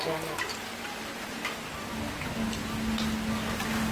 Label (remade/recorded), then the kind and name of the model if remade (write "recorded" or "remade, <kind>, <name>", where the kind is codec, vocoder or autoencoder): recorded